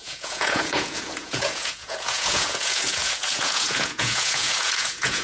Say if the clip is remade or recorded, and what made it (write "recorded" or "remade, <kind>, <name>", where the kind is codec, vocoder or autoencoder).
remade, vocoder, Vocos